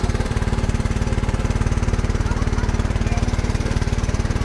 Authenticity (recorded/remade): remade